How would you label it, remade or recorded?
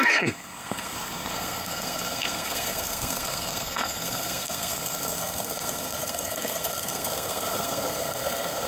remade